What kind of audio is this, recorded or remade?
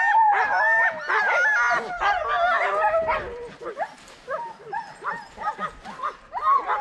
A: recorded